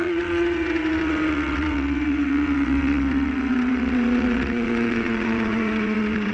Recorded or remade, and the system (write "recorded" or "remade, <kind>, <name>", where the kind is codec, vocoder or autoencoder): remade, vocoder, WaveNeXt